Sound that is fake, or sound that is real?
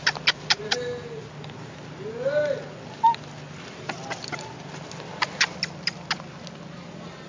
real